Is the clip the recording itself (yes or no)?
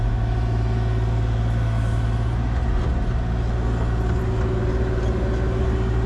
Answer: yes